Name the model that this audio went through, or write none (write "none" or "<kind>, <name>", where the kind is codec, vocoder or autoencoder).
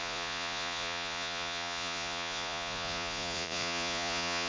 vocoder, Vocos